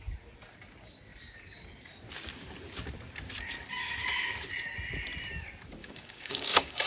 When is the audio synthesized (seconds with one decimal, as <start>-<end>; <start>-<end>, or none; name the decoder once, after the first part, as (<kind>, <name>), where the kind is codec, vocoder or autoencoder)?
5.8-6.9 (codec, DAC)